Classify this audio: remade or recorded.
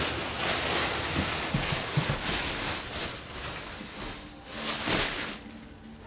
recorded